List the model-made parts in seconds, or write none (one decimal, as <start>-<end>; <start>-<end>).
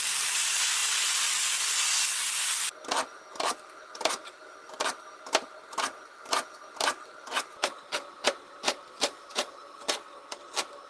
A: none